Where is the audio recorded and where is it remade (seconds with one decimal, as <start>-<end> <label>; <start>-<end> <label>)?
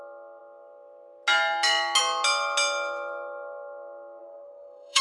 0.0-4.2 recorded; 4.2-5.0 remade